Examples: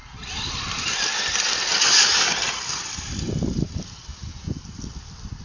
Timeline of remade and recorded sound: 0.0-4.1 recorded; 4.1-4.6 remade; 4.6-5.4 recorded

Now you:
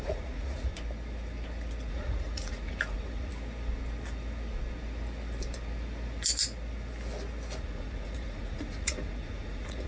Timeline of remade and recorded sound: 0.0-0.7 remade; 0.7-1.9 recorded; 1.9-3.3 remade; 3.3-7.6 recorded; 7.6-9.9 remade

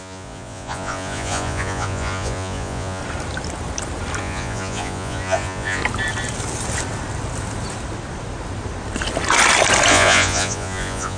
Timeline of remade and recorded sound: 0.0-3.0 remade; 3.0-4.2 recorded; 4.2-5.8 remade; 5.8-9.9 recorded; 9.9-11.2 remade

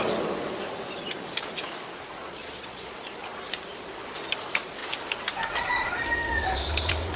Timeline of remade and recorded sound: 0.0-2.2 recorded; 2.2-2.9 remade; 2.9-7.2 recorded

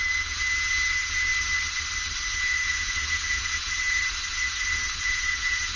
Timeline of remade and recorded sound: 0.0-1.3 remade; 1.3-2.3 recorded; 2.3-5.8 remade

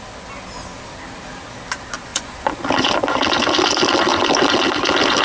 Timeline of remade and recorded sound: 0.0-2.1 recorded; 2.1-2.6 remade; 2.6-5.2 recorded

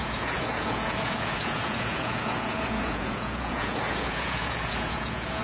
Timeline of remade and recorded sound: 0.0-5.4 remade

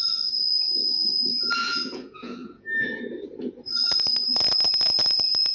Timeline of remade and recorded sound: 0.0-1.6 recorded; 1.6-3.0 remade; 3.0-5.5 recorded